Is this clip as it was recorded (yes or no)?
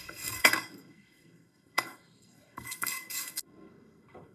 no